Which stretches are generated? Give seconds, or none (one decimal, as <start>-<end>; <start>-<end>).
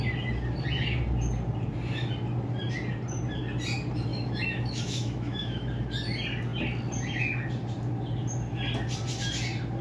4.1-5.7